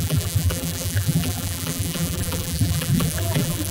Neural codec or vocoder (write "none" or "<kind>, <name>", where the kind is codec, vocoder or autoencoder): vocoder, BigVGAN v2